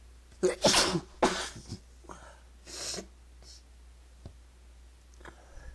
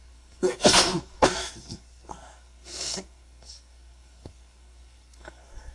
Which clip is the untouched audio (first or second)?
first